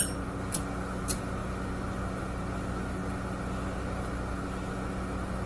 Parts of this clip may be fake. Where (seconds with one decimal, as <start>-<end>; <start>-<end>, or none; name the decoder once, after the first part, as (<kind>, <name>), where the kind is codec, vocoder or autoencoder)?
none